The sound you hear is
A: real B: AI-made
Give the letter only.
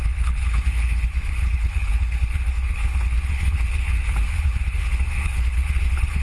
B